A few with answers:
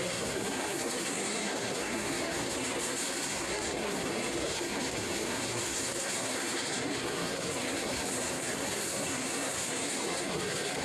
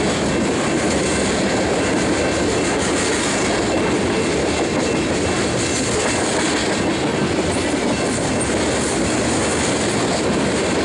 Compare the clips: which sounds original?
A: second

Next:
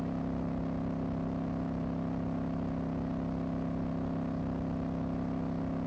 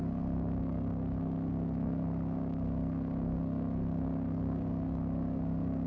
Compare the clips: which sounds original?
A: first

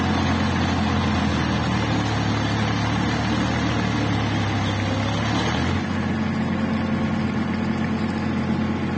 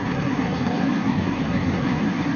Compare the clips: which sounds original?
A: first